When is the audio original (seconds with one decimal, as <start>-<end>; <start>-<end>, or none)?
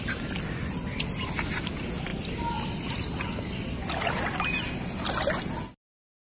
0.0-6.2